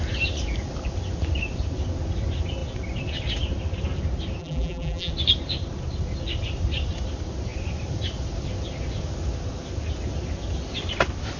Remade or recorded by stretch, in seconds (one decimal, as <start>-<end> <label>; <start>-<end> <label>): 0.0-4.4 recorded; 4.4-5.1 remade; 5.1-11.4 recorded